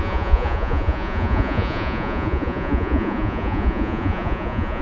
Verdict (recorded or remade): remade